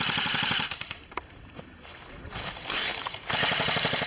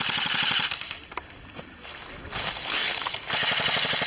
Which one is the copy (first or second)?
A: first